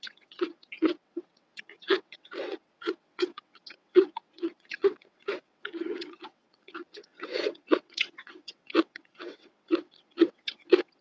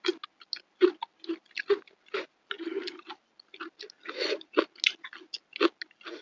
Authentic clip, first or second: second